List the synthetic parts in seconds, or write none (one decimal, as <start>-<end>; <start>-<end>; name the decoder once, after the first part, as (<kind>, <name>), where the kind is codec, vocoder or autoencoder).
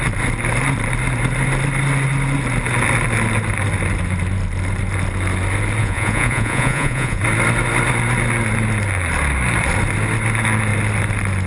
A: 5.8-7.2 (vocoder, Vocos)